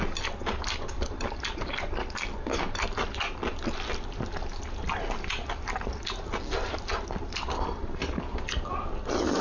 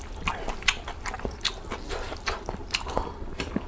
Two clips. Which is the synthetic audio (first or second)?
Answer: second